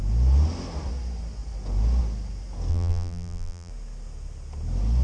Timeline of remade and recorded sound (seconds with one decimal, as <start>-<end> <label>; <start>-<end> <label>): 0.0-2.7 recorded; 2.7-3.7 remade; 3.7-5.0 recorded